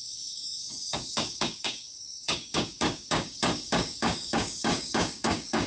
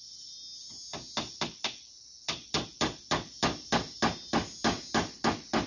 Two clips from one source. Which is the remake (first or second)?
first